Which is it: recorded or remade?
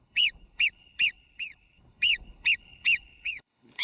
remade